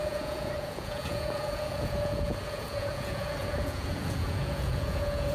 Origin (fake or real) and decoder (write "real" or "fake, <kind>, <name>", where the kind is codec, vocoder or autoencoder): fake, vocoder, Vocos